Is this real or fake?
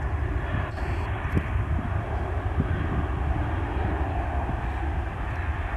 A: real